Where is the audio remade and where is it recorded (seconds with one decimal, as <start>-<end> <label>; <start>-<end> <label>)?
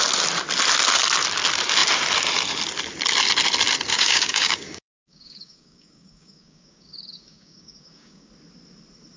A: 0.0-3.9 recorded; 3.9-8.3 remade; 8.3-9.2 recorded